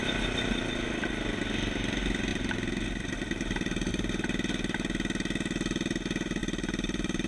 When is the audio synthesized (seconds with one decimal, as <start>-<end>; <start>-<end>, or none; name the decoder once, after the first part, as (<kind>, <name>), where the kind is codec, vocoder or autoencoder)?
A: 2.3-3.9 (vocoder, BigVGAN v2); 6.4-7.3